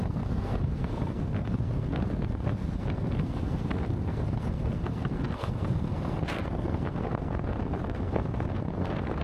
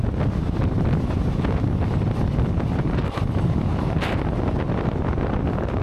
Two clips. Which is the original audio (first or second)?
second